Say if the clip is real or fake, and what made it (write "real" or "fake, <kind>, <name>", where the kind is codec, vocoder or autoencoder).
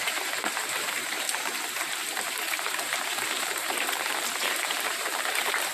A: fake, vocoder, BigVGAN v2